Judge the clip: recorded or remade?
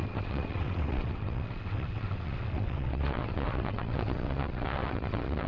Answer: remade